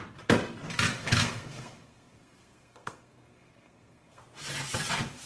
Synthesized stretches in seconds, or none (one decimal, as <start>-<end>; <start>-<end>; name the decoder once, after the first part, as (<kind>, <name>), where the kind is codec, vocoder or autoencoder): 1.0-4.2 (codec, SNAC)

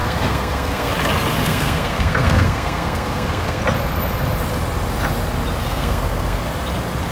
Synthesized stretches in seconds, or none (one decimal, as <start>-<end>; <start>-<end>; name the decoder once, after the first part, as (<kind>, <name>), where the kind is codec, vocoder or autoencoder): 0.0-0.9 (codec, SNAC); 1.4-3.6; 5.6-6.4

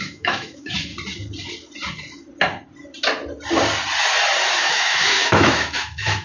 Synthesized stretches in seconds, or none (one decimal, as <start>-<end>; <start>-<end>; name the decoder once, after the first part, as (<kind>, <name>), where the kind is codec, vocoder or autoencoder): 0.0-0.9 (autoencoder, DAC-VAE); 4.6-6.2

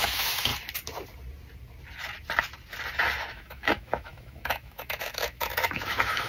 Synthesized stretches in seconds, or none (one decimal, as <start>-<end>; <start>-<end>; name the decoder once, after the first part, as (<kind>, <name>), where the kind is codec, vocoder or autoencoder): 0.0-0.5 (autoencoder, DAC-VAE); 3.3-6.3

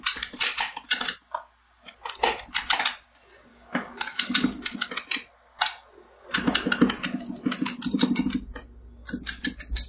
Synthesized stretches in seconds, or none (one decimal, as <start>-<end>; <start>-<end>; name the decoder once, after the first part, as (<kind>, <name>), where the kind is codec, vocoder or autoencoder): 3.5-4.6 (codec, DAC)

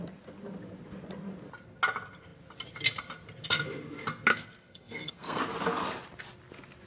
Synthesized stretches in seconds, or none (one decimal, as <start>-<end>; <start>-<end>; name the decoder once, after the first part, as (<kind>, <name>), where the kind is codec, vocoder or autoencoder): 4.3-5.4 (codec, SNAC)

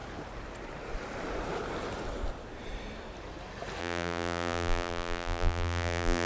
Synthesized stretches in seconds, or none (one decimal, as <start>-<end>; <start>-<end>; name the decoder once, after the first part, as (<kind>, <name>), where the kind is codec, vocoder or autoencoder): 3.8-6.3 (vocoder, BigVGAN v2)

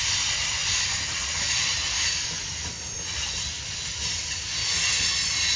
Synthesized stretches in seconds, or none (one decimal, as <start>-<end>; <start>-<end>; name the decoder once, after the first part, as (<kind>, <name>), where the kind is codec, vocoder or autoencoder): none